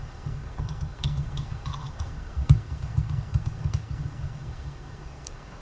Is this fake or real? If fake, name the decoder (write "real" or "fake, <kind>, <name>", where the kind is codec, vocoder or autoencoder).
fake, codec, SNAC